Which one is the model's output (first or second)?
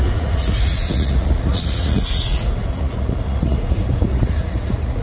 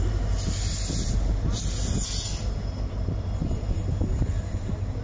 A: first